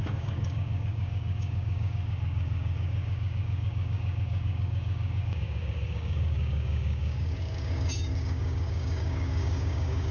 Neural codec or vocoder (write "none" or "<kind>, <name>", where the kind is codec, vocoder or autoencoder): codec, DAC